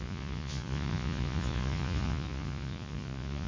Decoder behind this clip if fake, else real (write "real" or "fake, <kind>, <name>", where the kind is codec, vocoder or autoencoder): fake, vocoder, Vocos